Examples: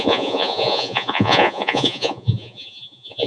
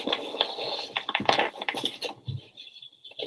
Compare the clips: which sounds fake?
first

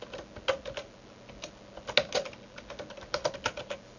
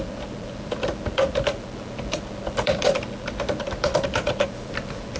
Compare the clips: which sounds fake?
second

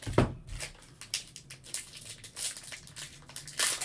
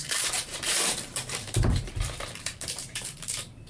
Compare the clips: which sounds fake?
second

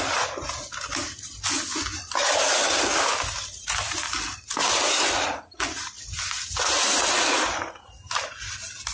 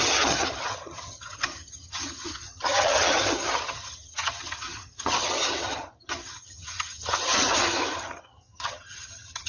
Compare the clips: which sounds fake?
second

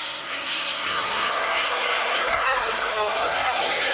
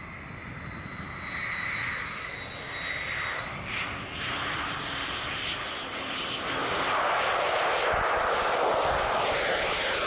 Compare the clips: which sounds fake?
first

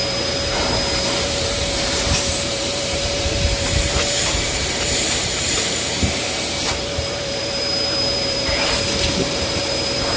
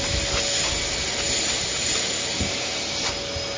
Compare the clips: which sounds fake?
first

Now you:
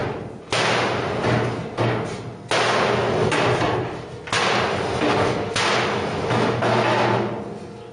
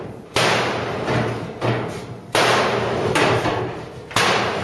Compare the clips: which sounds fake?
second